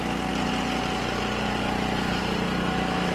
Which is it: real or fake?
real